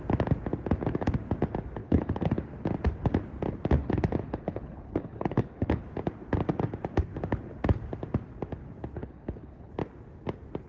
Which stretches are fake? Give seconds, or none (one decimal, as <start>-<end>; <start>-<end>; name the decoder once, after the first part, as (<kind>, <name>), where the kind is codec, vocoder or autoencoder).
1.8-2.3 (codec, HILCodec); 3.8-5.8; 9.0-9.7